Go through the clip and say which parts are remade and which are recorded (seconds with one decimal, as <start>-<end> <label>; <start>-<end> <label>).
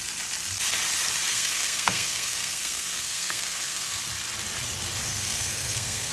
0.0-1.3 recorded; 1.3-4.0 remade; 4.0-5.1 recorded; 5.1-6.1 remade